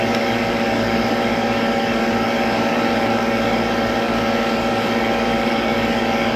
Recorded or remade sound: remade